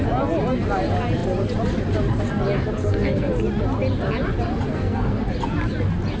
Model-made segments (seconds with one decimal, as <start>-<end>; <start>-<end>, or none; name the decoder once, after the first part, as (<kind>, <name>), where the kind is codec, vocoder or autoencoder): 2.8-3.3 (codec, SNAC); 4.7-5.2

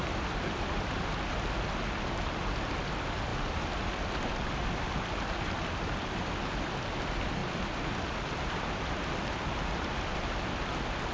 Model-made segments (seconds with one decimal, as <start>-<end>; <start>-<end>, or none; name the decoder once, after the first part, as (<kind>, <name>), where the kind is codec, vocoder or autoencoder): none

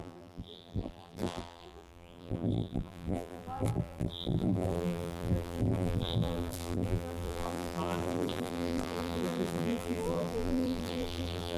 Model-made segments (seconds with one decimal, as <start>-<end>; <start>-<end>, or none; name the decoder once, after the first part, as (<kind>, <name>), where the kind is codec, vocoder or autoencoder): 0.0-11.6 (vocoder, BigVGAN v2)

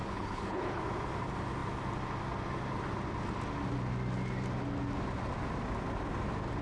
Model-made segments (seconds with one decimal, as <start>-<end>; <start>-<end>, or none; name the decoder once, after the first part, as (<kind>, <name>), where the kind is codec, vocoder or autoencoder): 0.0-0.8 (codec, HILCodec)

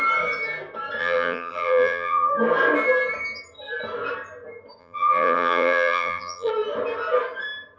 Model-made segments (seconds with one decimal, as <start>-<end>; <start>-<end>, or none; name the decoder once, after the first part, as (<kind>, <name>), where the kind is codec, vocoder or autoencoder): 1.0-2.3 (vocoder, BigVGAN v2); 4.8-6.5